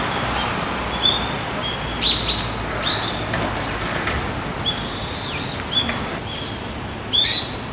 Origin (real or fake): real